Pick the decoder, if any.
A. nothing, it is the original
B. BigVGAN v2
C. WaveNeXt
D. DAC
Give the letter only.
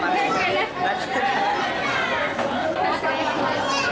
A